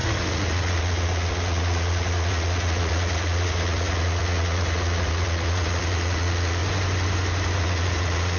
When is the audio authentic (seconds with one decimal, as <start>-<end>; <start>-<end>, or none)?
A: 6.6-7.6